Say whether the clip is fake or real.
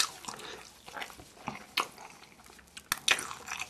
real